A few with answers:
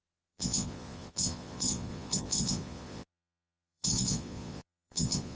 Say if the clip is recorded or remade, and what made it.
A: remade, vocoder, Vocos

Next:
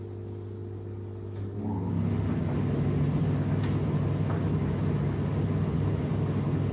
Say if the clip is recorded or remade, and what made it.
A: recorded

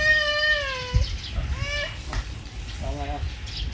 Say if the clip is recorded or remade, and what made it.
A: recorded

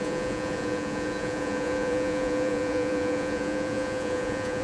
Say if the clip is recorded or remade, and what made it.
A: remade, vocoder, Vocos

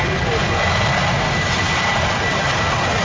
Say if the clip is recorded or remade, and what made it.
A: recorded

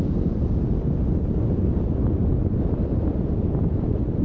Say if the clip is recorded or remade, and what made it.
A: recorded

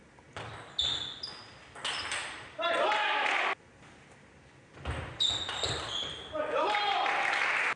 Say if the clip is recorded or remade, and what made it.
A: recorded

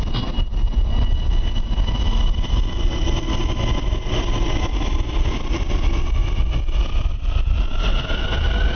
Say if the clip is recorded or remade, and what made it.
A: recorded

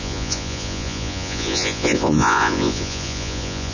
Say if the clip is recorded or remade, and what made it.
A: remade, vocoder, Vocos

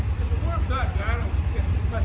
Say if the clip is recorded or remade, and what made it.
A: recorded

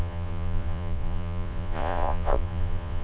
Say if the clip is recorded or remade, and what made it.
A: remade, vocoder, Vocos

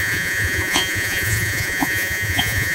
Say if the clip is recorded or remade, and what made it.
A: remade, vocoder, Vocos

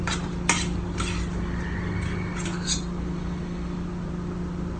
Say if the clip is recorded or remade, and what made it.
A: recorded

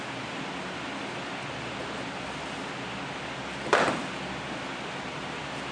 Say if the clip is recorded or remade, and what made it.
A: recorded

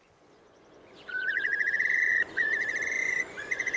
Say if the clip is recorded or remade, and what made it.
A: remade, vocoder, Vocos